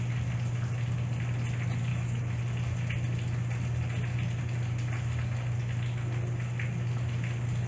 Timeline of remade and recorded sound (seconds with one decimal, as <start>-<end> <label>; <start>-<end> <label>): 0.0-1.9 recorded; 1.9-2.4 remade; 2.4-7.7 recorded